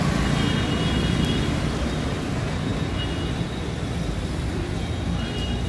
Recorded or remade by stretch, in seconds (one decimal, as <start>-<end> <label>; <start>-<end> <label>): 0.0-5.7 recorded